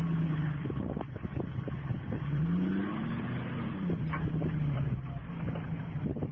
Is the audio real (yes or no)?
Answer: no